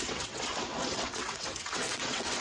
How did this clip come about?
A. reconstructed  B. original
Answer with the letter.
A